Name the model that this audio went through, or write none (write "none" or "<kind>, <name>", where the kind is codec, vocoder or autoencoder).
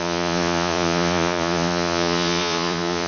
vocoder, Vocos